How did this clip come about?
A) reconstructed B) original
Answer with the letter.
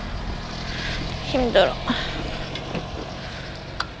B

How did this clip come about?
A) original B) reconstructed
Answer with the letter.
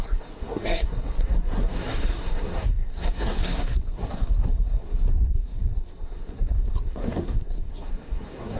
B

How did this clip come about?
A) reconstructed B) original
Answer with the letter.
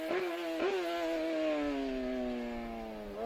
B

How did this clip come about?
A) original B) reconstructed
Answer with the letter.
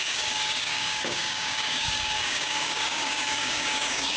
B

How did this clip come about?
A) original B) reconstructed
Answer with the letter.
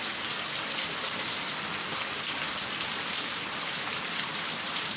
B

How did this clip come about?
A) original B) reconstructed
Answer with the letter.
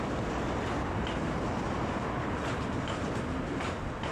A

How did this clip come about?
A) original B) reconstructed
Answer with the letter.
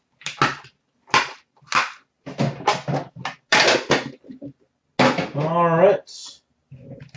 A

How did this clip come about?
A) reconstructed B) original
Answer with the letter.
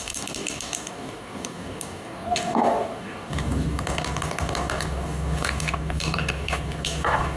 A